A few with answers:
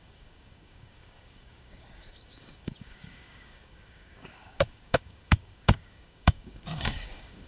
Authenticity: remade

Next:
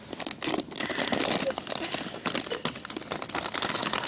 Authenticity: recorded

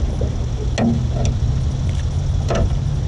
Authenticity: recorded